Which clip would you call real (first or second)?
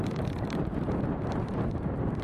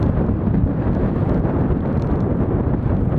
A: second